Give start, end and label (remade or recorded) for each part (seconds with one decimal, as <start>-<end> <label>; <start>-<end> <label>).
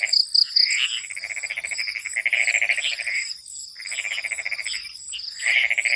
0.0-6.0 recorded